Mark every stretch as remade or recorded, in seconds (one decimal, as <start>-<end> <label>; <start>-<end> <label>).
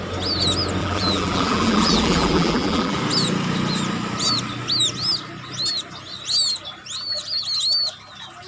0.0-0.8 recorded; 0.8-3.0 remade; 3.0-8.5 recorded